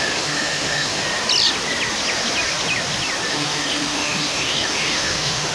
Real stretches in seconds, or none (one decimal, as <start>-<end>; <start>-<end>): 1.0-3.3